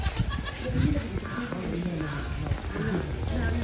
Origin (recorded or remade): recorded